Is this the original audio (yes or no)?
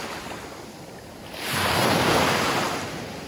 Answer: yes